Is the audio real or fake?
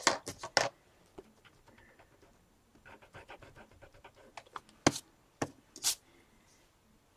real